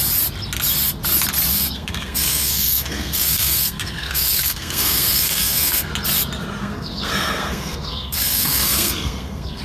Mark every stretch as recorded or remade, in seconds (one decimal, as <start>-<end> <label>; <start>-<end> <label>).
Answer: 0.0-1.5 recorded; 1.5-5.9 remade; 5.9-6.6 recorded; 6.6-9.6 remade